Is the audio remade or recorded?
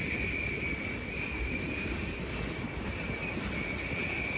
recorded